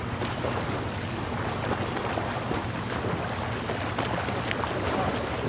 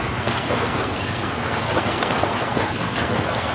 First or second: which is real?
first